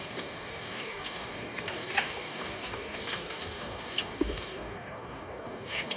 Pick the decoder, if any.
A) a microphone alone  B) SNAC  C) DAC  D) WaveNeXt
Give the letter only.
C